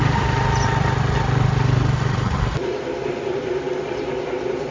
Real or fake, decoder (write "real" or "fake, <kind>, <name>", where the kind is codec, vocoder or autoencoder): real